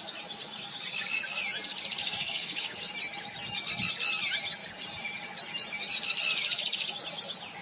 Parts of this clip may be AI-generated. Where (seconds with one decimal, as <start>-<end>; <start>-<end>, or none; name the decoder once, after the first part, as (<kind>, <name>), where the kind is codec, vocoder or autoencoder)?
2.0-2.9 (codec, DAC)